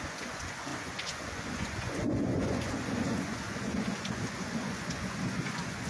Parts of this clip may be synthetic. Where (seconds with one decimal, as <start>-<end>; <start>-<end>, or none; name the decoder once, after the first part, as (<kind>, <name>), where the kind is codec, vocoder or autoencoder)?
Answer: 0.0-5.9 (vocoder, Vocos)

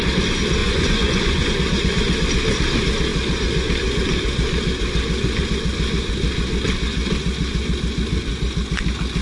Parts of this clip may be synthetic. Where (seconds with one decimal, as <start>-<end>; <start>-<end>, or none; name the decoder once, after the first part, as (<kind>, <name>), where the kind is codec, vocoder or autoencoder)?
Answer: 0.6-1.5 (vocoder, Vocos)